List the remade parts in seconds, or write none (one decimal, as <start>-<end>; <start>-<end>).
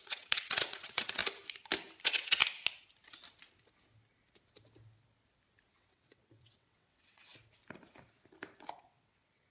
0.0-1.2; 2.0-2.4; 5.7-7.3; 8.8-9.5